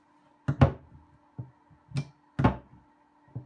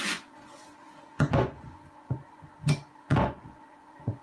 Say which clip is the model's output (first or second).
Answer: second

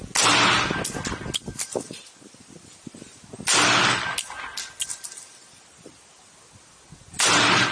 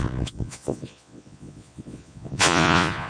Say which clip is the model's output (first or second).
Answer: second